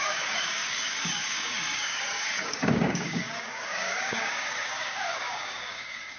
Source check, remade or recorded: remade